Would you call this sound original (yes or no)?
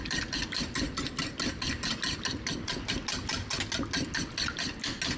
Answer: yes